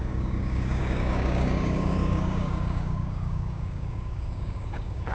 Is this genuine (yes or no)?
no